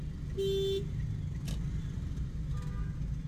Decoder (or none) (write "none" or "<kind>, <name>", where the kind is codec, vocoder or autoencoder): none